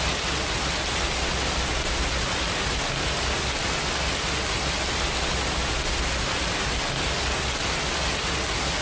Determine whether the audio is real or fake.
real